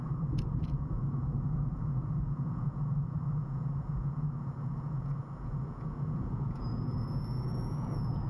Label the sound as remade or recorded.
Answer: remade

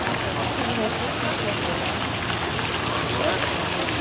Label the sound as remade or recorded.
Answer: recorded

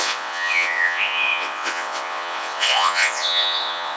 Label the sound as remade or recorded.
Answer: remade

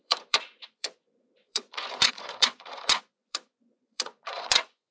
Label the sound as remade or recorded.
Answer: remade